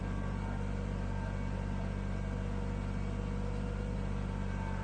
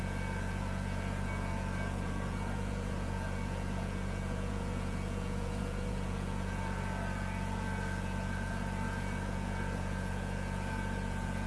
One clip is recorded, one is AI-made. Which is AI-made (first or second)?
second